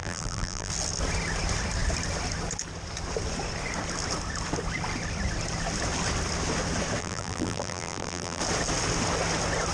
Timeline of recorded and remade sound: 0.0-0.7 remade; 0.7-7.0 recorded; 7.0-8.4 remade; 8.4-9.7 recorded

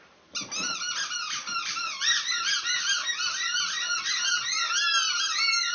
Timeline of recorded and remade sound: 0.0-1.2 recorded; 1.2-4.3 remade; 4.3-5.7 recorded

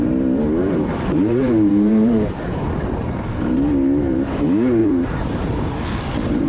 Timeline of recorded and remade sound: 0.0-0.6 recorded; 0.6-3.3 remade; 3.3-4.8 recorded; 4.8-6.1 remade; 6.1-6.5 recorded

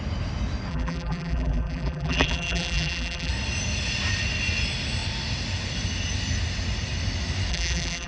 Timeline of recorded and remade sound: 0.0-0.7 recorded; 0.7-3.3 remade; 3.3-7.5 recorded; 7.5-8.1 remade